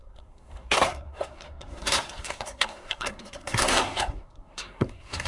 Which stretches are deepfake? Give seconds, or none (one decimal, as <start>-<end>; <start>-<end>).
0.0-5.3